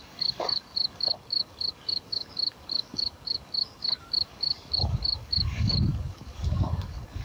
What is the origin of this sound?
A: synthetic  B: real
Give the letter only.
A